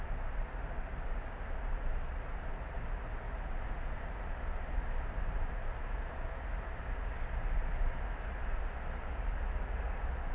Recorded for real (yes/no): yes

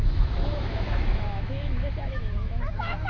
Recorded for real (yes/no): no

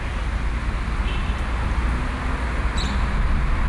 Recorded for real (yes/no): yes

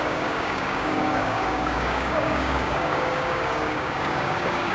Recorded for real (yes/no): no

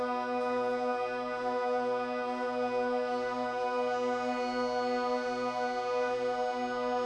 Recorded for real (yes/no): yes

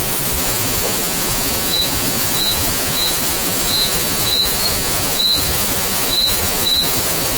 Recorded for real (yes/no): no